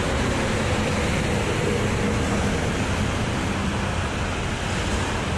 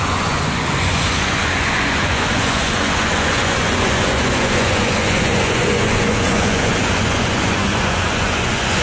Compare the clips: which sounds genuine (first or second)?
first